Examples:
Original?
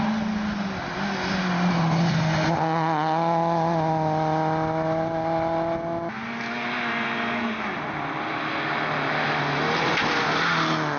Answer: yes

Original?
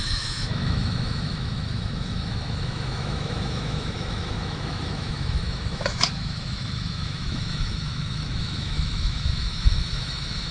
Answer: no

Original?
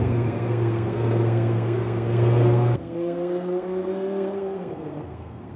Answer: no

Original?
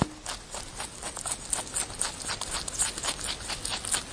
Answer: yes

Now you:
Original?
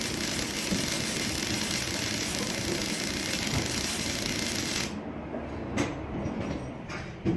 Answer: yes